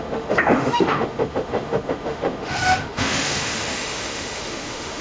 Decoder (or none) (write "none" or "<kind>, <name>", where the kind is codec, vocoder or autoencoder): autoencoder, DAC-VAE